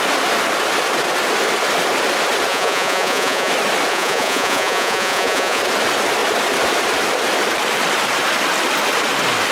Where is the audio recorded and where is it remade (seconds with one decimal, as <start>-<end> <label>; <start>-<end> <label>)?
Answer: 0.0-2.5 recorded; 2.5-3.5 remade; 3.5-3.9 recorded; 3.9-5.6 remade; 5.6-9.5 recorded